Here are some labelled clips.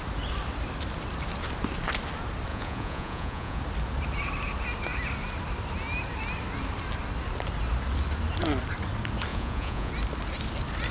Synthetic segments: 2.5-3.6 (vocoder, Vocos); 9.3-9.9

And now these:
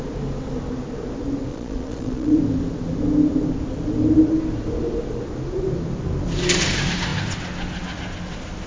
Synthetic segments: 1.5-2.4 (vocoder, Vocos)

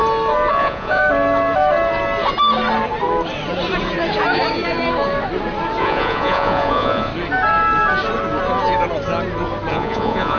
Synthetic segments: 0.5-1.0 (vocoder, Vocos); 5.8-7.1; 9.7-10.4